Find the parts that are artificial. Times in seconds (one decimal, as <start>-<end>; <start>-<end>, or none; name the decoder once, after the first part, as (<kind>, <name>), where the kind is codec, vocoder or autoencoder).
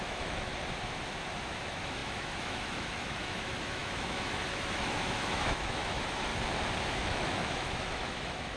0.0-0.5 (autoencoder, DAC-VAE); 1.5-6.3; 6.9-8.6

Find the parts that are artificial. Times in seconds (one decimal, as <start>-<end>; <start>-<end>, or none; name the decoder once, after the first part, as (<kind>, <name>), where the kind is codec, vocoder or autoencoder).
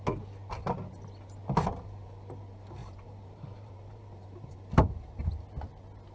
2.8-5.2 (vocoder, BigVGAN v2)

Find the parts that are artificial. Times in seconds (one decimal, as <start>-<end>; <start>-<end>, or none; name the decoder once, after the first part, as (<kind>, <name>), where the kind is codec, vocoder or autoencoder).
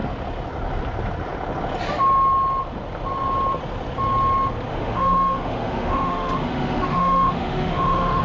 4.7-8.2 (autoencoder, DAC-VAE)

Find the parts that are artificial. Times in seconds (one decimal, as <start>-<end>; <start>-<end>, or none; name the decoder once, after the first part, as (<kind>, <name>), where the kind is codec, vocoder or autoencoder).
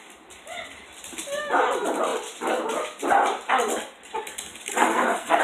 4.7-5.4 (codec, SNAC)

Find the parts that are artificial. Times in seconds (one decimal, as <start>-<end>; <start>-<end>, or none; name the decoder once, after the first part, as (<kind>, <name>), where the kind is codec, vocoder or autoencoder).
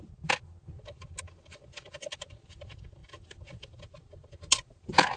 none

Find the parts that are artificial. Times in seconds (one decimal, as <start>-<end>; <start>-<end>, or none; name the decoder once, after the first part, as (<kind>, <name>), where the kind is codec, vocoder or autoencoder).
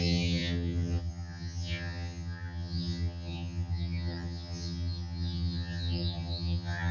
0.0-6.9 (vocoder, HiFi-GAN)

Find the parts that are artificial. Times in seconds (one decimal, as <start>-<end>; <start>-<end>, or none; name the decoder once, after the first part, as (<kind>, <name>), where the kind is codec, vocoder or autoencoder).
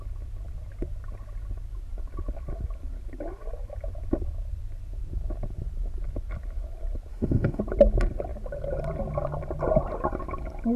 7.1-7.6 (autoencoder, DAC-VAE)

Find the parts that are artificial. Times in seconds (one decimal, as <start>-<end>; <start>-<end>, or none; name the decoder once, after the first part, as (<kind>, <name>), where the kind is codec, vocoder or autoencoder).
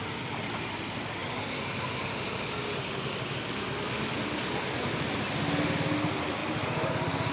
none